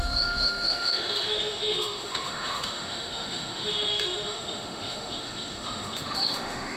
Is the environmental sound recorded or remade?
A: remade